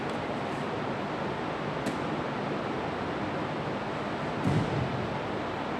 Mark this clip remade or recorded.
recorded